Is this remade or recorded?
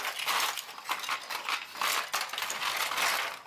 recorded